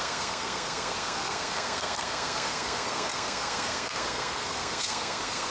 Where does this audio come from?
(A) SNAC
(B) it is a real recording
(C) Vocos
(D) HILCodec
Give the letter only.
A